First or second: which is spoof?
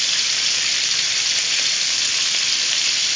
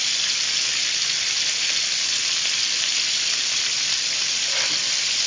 first